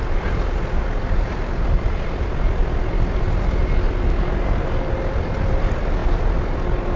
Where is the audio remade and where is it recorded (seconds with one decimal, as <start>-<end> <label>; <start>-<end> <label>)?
0.0-7.0 recorded